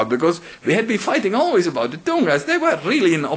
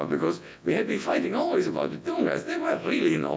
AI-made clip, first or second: second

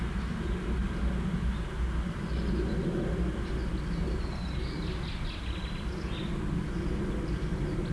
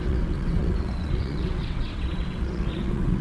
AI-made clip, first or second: second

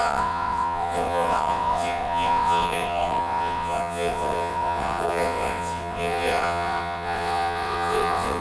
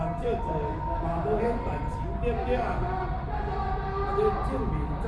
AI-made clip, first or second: first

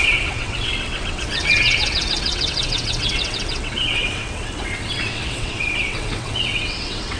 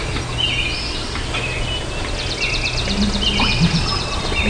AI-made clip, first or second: first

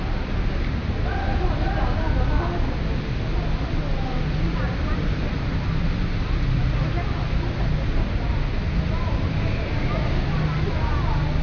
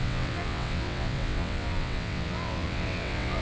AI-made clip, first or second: second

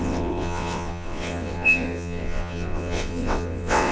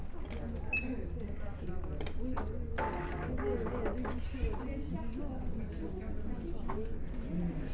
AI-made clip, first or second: first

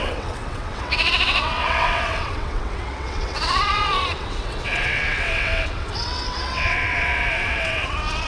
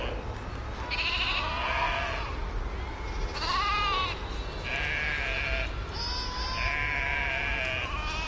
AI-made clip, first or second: first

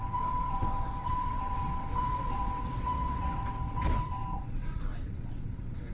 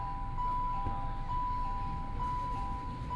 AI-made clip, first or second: first